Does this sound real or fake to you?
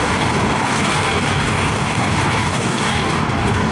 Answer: fake